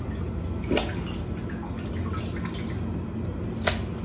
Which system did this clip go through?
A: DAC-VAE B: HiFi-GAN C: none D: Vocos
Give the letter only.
C